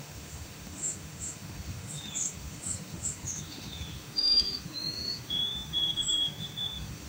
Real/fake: fake